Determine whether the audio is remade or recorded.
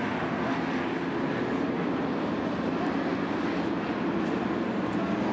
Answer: recorded